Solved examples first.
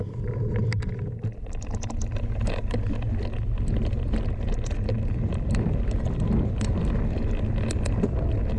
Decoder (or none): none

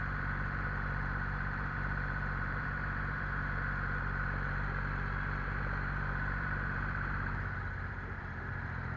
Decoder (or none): vocoder, BigVGAN v2